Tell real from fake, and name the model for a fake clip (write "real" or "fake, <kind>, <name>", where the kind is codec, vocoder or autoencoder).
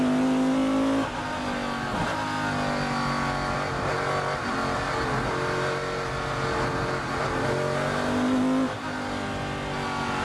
real